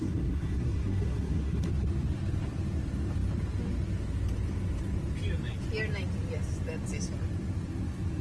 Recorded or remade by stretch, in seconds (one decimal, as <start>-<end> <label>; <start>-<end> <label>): 0.0-1.7 remade; 1.7-8.2 recorded